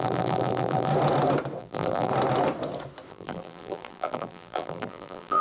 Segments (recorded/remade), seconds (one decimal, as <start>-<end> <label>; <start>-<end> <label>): 0.0-0.9 remade; 0.9-1.6 recorded; 1.6-2.1 remade; 2.1-3.1 recorded; 3.1-5.4 remade